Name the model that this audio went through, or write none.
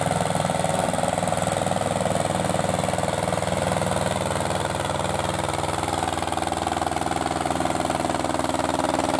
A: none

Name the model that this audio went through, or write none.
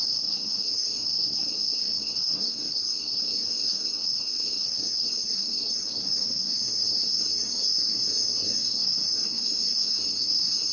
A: codec, SNAC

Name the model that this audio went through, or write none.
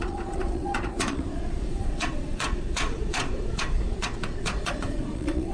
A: vocoder, Vocos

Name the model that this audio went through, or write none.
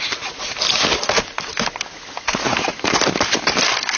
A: none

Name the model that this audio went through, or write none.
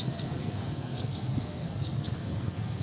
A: codec, SNAC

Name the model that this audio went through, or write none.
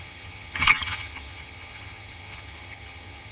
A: vocoder, HiFi-GAN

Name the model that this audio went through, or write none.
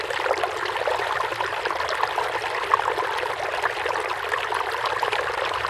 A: none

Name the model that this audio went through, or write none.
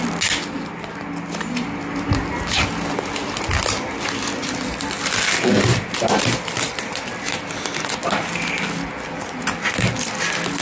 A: none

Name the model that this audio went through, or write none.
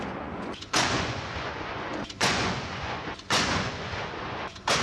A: vocoder, Vocos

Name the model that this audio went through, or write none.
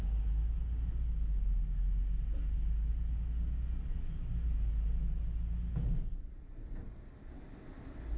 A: none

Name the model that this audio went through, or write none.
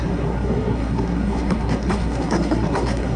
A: codec, SNAC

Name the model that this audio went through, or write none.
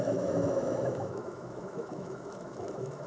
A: autoencoder, DAC-VAE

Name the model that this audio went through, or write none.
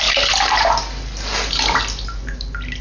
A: none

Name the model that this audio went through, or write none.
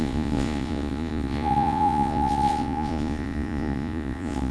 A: vocoder, Vocos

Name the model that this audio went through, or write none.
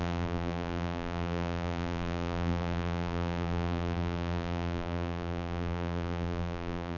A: vocoder, BigVGAN v2